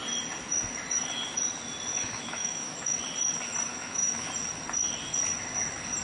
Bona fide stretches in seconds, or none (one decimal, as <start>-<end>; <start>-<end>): 0.0-1.9; 3.0-3.7; 4.3-6.0